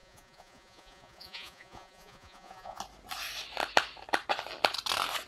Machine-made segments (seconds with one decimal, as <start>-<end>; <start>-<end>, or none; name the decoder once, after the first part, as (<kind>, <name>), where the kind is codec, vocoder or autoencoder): 0.0-2.8 (vocoder, Vocos)